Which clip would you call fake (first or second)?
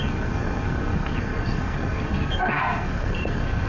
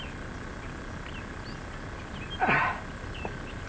first